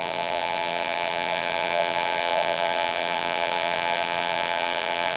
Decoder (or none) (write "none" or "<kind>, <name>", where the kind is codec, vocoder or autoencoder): vocoder, BigVGAN v2